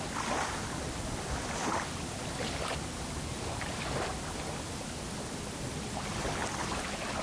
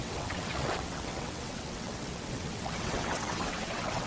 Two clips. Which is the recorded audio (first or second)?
first